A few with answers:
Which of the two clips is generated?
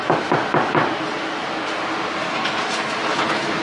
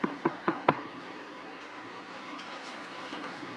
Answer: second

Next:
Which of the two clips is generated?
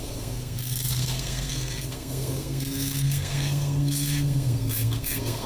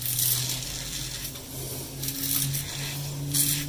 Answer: first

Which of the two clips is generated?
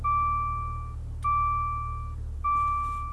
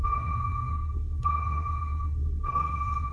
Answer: second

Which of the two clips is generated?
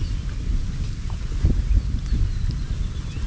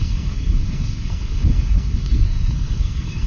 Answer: second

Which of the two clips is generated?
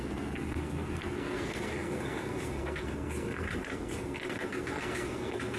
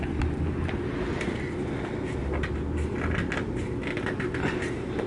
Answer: first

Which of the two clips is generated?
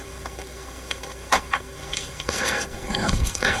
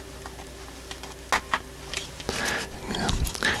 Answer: first